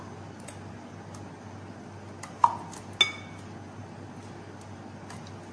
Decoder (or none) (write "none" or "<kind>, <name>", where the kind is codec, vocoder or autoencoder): none